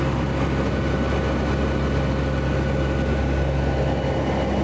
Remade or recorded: recorded